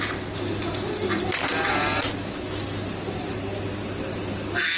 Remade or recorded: recorded